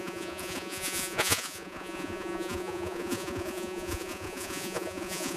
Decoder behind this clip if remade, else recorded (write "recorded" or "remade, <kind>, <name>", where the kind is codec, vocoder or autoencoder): remade, vocoder, Vocos